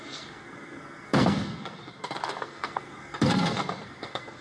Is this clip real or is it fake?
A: fake